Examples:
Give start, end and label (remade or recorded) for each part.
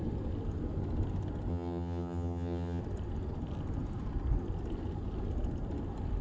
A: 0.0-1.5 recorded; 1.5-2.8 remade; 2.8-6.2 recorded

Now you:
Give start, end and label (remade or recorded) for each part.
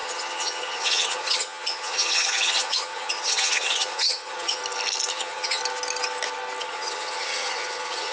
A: 0.0-4.6 remade; 4.6-5.1 recorded; 5.1-5.6 remade; 5.6-6.6 recorded; 6.6-8.1 remade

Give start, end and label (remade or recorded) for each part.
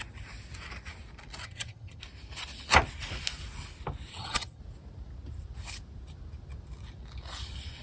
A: 0.0-1.4 recorded; 1.4-2.0 remade; 2.0-4.1 recorded; 4.1-4.6 remade; 4.6-7.8 recorded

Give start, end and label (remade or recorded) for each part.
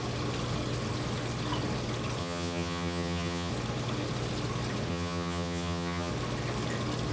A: 0.0-2.2 recorded; 2.2-3.5 remade; 3.5-4.9 recorded; 4.9-6.1 remade; 6.1-7.1 recorded